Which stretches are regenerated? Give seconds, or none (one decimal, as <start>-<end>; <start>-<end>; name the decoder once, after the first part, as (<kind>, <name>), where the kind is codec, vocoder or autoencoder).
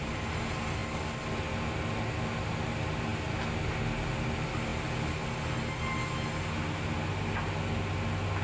none